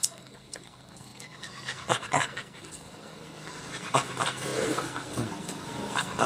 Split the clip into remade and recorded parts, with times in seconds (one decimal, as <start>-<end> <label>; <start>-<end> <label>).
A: 0.0-6.3 remade